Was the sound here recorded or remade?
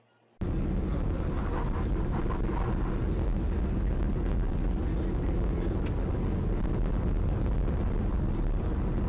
recorded